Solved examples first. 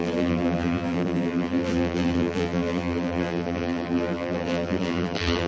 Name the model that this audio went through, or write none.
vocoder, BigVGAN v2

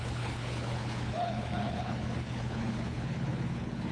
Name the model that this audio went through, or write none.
codec, HILCodec